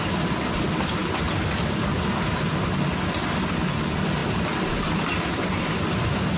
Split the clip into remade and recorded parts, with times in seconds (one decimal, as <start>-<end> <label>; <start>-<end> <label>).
0.0-6.4 recorded